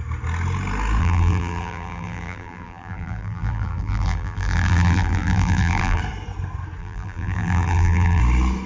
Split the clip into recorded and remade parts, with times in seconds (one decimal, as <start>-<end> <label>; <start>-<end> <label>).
0.0-1.0 recorded; 1.0-6.0 remade; 6.0-6.8 recorded; 6.8-8.2 remade; 8.2-8.7 recorded